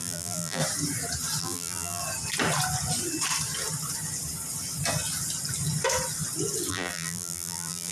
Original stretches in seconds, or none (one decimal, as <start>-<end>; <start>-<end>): 0.6-1.4; 2.0-6.7